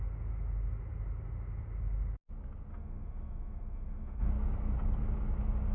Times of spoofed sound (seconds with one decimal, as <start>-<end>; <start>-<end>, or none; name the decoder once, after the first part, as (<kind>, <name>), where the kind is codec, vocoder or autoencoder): 2.7-4.3 (autoencoder, DAC-VAE)